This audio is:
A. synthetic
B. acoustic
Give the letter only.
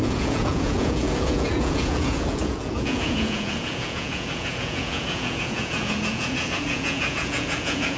A